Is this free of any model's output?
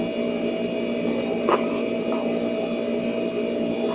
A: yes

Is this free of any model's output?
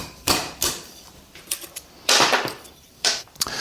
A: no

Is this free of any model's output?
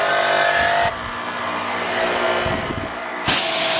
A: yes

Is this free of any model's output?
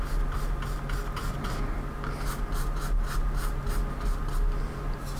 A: yes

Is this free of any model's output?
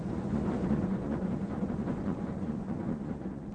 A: no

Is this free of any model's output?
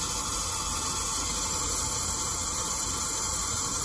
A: yes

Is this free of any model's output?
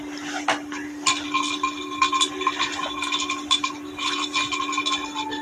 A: no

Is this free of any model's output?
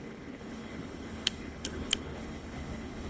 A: no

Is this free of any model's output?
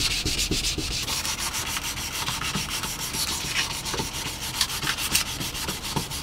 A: yes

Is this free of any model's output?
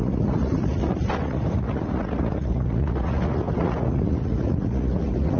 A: no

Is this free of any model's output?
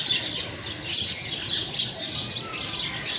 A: yes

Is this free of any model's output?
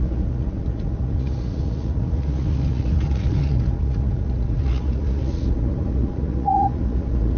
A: no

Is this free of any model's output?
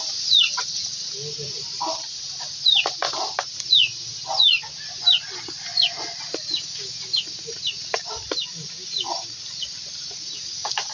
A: yes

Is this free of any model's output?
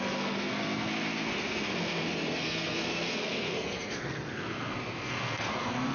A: no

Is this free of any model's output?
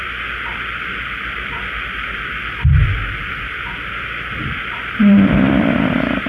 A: no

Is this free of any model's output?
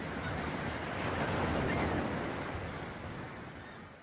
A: yes